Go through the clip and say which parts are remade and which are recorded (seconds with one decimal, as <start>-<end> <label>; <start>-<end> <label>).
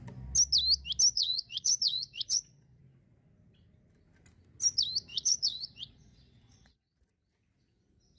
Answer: 0.0-1.1 recorded; 1.1-2.8 remade; 2.8-5.1 recorded; 5.1-7.0 remade; 7.0-8.2 recorded